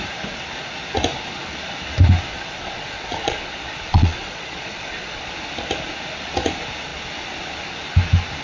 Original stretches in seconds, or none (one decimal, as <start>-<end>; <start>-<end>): 0.0-2.3; 5.3-8.4